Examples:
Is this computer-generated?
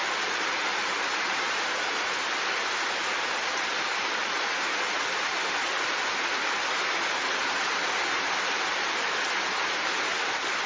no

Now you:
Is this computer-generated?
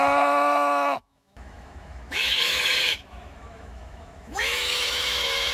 yes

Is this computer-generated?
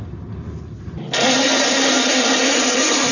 no